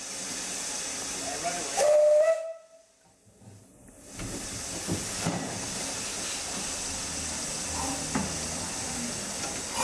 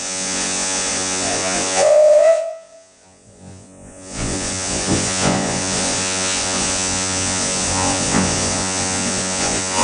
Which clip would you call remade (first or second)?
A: second